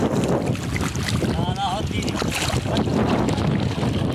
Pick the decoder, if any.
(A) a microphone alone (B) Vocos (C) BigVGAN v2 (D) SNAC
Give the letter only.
A